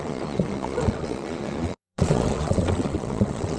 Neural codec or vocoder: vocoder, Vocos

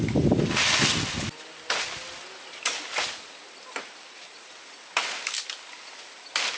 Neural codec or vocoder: none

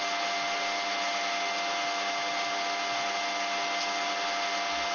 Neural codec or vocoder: none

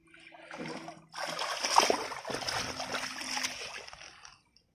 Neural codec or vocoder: none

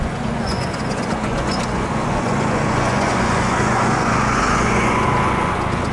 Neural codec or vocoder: vocoder, Vocos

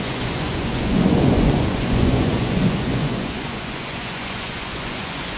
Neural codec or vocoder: vocoder, Vocos